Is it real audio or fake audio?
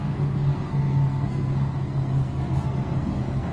fake